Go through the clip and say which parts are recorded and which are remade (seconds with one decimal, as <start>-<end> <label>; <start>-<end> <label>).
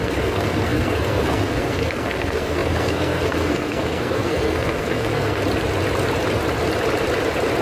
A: 0.0-5.4 remade; 5.4-7.6 recorded